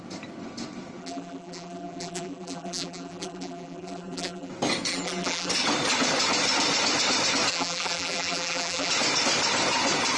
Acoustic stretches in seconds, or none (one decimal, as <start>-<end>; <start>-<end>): 0.0-1.0; 4.5-4.9; 5.5-7.5; 8.9-10.2